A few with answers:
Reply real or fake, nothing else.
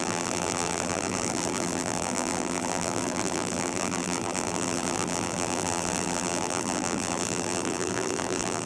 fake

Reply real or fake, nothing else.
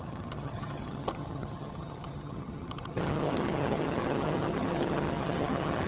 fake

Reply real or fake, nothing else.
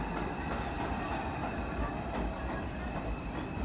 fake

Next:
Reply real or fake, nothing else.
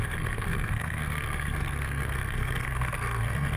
fake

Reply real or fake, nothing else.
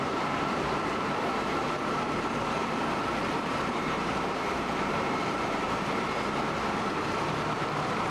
fake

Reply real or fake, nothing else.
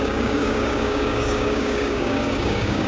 fake